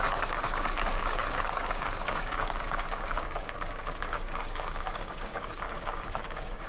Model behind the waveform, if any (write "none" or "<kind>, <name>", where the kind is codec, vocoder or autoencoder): codec, DAC